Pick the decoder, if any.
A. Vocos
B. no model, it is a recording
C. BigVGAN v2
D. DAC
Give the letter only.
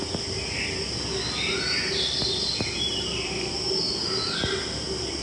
B